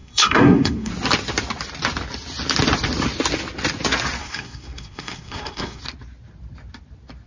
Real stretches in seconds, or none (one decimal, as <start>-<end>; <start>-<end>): 0.9-4.2; 5.8-7.3